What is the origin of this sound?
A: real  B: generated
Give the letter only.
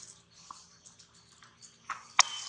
A